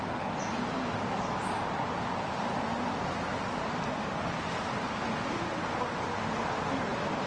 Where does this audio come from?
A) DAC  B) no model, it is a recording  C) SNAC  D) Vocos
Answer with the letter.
B